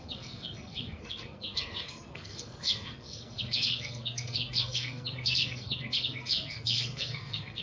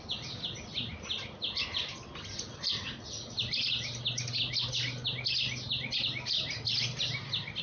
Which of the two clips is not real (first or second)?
first